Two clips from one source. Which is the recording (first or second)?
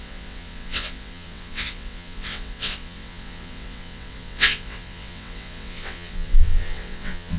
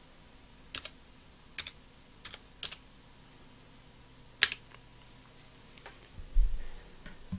second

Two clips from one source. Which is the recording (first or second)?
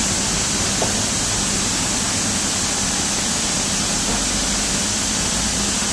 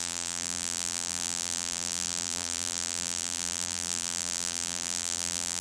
first